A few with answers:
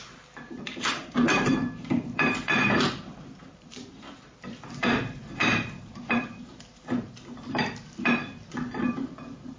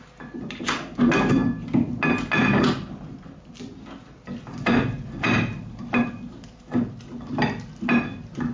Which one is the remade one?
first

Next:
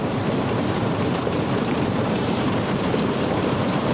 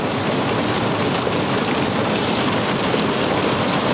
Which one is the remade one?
first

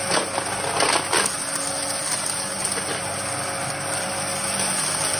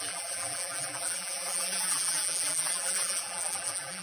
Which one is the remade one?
second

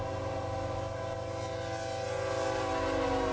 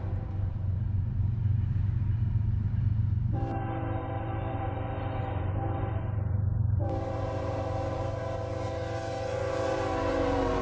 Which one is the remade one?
second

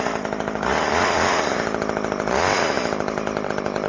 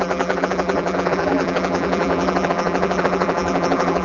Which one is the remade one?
second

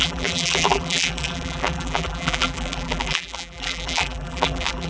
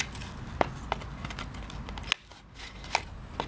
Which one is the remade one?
first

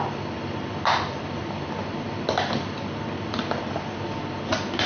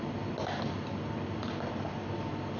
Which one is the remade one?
first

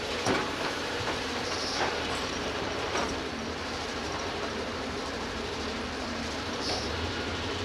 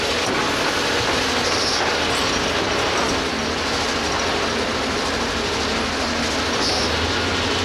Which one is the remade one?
first